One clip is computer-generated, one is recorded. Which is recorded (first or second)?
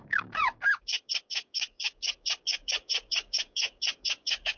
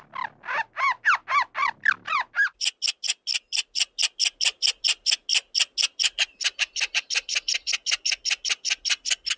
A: second